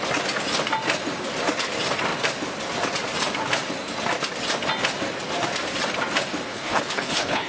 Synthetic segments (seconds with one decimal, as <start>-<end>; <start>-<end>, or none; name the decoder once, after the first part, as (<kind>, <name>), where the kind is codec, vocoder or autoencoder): 6.5-7.5 (codec, HILCodec)